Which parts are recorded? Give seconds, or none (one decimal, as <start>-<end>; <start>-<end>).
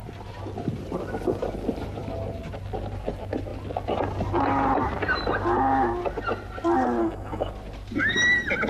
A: 0.0-7.0; 7.5-8.7